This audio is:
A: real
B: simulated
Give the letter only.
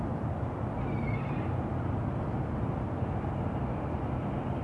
A